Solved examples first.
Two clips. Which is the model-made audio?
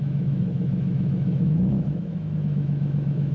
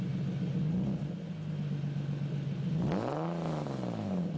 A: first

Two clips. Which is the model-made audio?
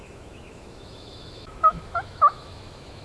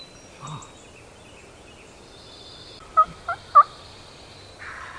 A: first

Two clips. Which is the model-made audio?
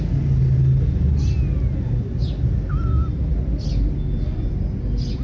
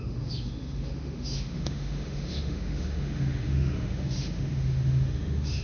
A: second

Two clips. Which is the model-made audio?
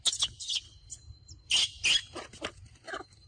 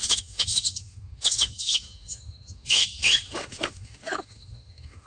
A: second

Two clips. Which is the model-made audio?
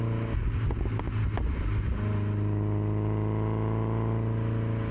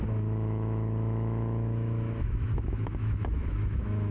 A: second